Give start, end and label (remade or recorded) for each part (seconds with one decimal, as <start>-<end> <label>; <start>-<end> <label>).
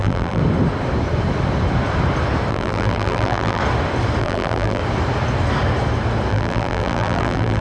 0.0-0.4 remade; 0.4-2.5 recorded; 2.5-3.6 remade; 3.6-4.2 recorded; 4.2-4.8 remade; 4.8-6.3 recorded; 6.3-7.6 remade